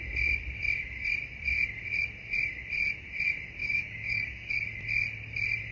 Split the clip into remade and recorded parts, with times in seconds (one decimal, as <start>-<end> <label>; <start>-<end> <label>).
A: 0.0-3.6 recorded; 3.6-4.5 remade; 4.5-5.7 recorded